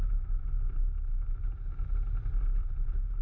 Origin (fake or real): real